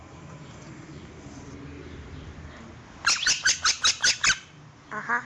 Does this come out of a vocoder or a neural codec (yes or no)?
no